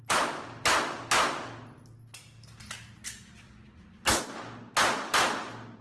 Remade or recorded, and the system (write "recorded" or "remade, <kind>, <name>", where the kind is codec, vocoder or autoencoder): recorded